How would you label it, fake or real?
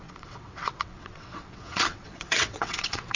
fake